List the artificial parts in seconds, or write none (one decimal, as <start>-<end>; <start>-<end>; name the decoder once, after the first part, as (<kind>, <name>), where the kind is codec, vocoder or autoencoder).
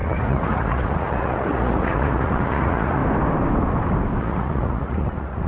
0.0-3.0 (vocoder, Vocos); 4.2-5.5